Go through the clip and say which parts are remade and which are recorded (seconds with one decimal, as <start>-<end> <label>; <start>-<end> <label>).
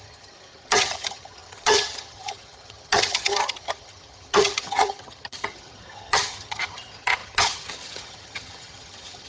0.0-9.3 remade